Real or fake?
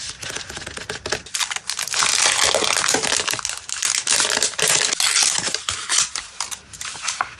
real